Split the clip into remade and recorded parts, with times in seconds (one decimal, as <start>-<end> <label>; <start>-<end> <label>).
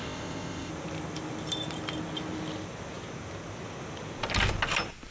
0.0-0.7 remade; 0.7-5.1 recorded